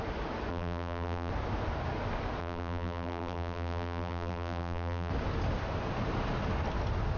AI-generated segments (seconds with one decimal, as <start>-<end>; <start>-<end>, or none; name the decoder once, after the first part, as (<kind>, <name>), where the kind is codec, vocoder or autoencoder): 0.5-1.3 (vocoder, BigVGAN v2); 2.4-5.1